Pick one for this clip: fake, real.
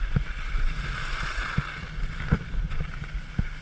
real